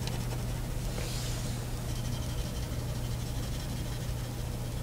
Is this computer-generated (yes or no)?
no